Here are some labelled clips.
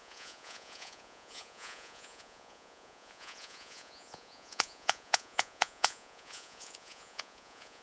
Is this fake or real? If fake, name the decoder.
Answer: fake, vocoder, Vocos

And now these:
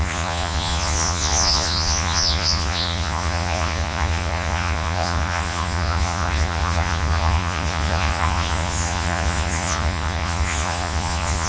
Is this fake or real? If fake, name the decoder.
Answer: fake, vocoder, Vocos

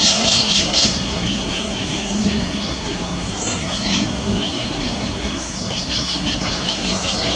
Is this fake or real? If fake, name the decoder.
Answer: fake, codec, SNAC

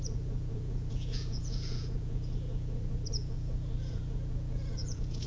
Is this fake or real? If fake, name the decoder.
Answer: fake, vocoder, Vocos